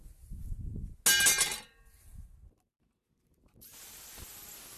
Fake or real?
real